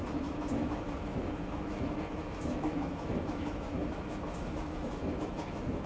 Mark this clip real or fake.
fake